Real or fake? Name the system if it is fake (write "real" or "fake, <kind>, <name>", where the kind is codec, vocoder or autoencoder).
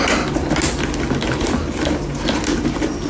real